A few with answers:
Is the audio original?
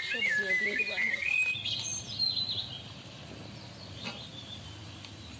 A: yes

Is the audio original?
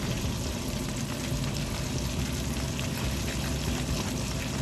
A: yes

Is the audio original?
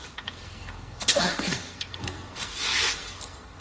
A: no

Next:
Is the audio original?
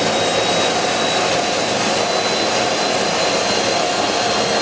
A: yes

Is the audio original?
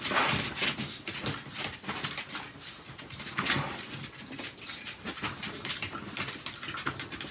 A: yes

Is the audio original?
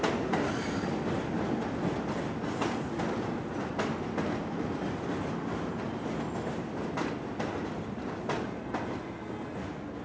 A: yes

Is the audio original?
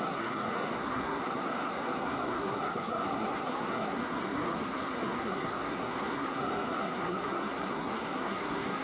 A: no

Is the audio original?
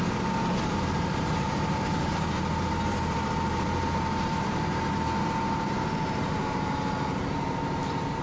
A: no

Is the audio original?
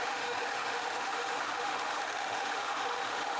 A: no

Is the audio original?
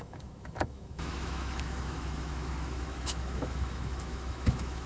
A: no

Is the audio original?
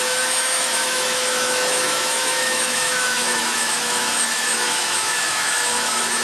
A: no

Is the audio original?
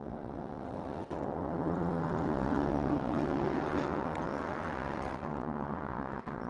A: no